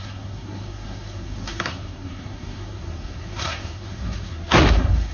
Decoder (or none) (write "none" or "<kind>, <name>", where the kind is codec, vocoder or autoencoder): codec, SNAC